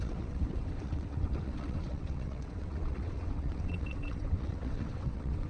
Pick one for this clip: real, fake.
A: fake